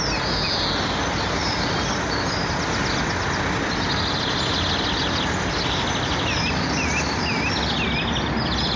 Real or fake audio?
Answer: real